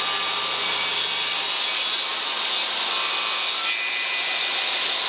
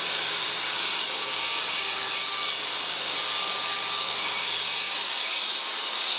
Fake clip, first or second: second